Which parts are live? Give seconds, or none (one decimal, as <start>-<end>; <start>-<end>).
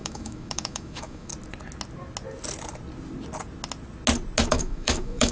1.3-4.5